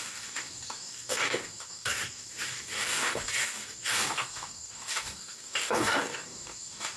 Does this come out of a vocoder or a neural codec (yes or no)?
yes